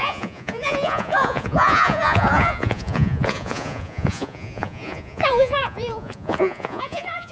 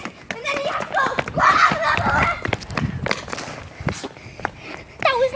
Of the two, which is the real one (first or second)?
second